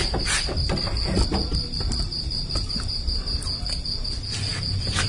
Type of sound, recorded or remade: recorded